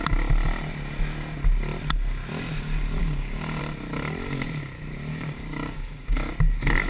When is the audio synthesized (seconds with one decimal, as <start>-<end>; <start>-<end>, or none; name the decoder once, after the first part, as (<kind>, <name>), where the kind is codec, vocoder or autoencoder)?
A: 3.0-3.6 (codec, DAC); 5.1-6.3